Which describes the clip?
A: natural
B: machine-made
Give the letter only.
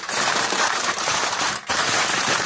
B